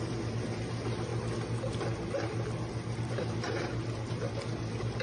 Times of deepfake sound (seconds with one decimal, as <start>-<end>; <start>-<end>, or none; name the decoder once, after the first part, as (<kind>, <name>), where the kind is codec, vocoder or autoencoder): none